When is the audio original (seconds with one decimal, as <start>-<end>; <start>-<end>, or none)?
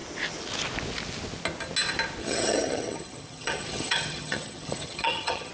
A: 0.0-2.2